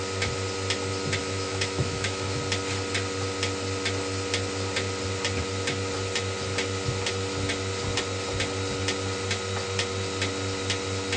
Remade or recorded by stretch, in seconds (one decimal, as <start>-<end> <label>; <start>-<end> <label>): 0.0-1.2 recorded; 1.2-2.4 remade; 2.4-11.2 recorded